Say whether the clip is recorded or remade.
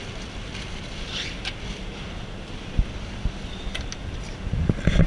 recorded